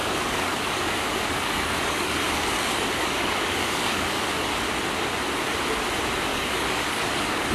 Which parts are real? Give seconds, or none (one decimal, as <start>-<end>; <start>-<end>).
4.5-6.3